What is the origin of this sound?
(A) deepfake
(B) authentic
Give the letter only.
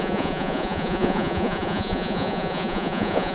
A